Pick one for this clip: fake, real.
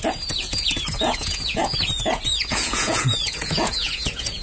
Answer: fake